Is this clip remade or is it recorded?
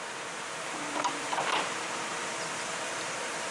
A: remade